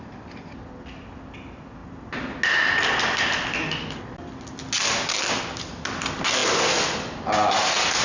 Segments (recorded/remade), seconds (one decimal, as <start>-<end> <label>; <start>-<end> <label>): 0.0-8.0 recorded

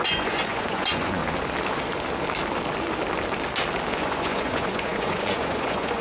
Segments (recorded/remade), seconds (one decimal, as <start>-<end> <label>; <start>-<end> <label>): 0.0-1.2 remade; 1.2-3.9 recorded; 3.9-6.0 remade

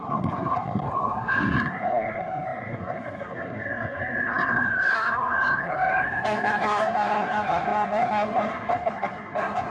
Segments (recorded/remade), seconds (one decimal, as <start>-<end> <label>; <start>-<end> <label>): 0.0-9.7 remade

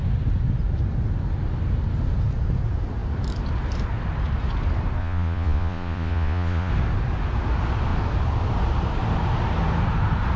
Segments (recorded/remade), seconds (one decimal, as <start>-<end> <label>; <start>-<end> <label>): 0.0-5.0 recorded; 5.0-6.7 remade; 6.7-10.4 recorded

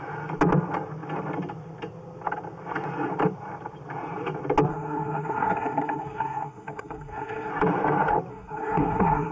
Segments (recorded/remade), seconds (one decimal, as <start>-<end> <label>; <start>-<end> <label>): 0.0-4.7 recorded; 4.7-7.5 remade; 7.5-8.3 recorded; 8.3-9.3 remade

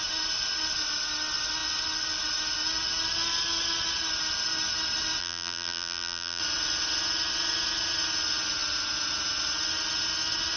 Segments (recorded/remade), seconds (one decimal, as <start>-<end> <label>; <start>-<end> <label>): 0.0-5.2 recorded; 5.2-6.4 remade; 6.4-10.6 recorded

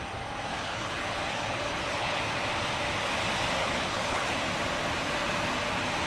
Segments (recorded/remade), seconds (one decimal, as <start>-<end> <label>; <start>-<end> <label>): 0.0-0.5 recorded; 0.5-2.2 remade; 2.2-3.6 recorded; 3.6-4.4 remade; 4.4-6.1 recorded